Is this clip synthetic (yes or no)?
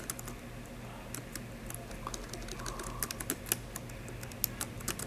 no